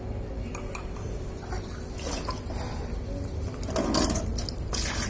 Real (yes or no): yes